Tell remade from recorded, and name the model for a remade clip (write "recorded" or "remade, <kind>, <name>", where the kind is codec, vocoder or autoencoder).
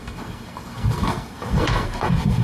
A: remade, codec, SNAC